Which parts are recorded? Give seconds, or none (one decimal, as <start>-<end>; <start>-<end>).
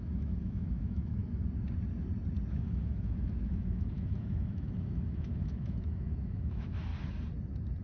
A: 1.2-2.5; 6.9-7.8